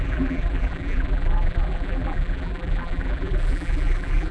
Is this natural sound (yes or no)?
no